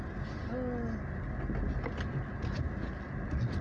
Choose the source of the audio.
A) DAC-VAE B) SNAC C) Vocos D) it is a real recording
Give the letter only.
D